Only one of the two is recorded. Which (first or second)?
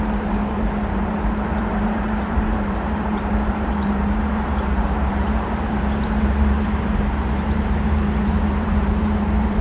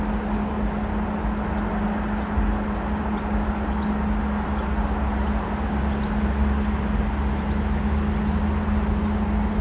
second